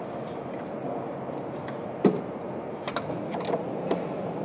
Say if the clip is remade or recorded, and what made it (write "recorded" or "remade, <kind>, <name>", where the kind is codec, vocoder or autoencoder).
recorded